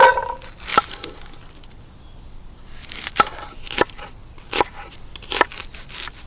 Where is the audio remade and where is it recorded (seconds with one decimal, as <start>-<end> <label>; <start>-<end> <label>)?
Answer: 0.0-6.3 recorded